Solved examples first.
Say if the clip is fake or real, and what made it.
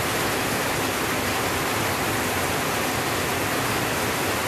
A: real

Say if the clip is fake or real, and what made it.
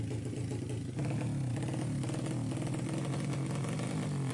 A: real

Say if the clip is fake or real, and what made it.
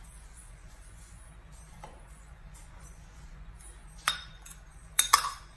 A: fake, vocoder, Vocos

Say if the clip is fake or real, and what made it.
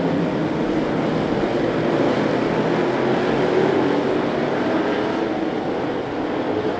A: real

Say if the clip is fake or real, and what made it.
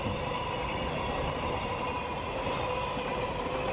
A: real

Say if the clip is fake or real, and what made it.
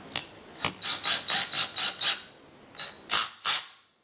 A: real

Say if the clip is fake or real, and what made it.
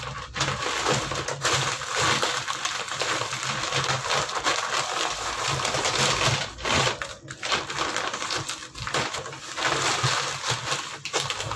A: real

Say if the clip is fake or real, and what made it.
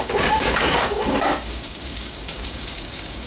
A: fake, codec, DAC